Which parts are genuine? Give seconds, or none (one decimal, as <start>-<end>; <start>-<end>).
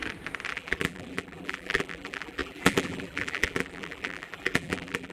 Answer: 0.0-0.5